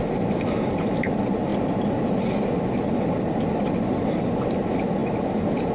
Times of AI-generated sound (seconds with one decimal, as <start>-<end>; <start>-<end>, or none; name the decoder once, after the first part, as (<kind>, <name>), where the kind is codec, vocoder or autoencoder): none